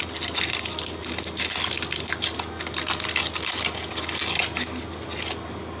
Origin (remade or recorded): recorded